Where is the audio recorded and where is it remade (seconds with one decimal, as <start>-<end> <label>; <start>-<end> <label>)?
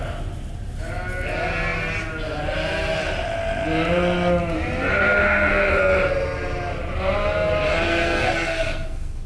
0.0-5.0 recorded; 5.0-5.7 remade; 5.7-7.7 recorded; 7.7-9.3 remade